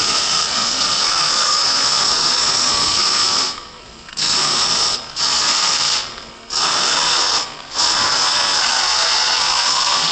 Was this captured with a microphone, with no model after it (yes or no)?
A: no